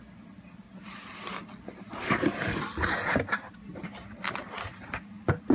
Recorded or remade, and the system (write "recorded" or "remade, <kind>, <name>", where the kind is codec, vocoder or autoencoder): recorded